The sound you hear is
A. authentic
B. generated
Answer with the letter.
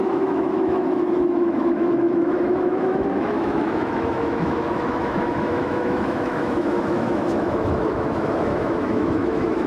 B